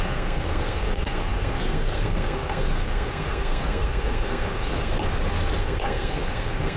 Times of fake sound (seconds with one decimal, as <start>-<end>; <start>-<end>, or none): 0.0-4.9; 5.6-6.8